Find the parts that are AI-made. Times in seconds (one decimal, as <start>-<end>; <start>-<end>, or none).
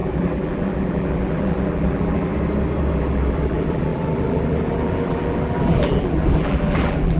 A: 0.0-2.3; 2.9-7.2